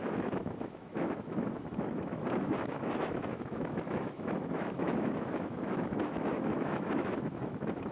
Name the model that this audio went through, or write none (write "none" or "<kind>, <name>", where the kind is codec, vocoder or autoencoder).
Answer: autoencoder, DAC-VAE